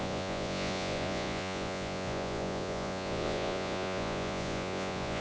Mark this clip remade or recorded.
remade